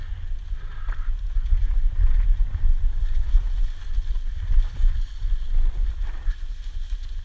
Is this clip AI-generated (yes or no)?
no